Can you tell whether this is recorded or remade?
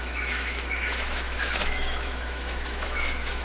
remade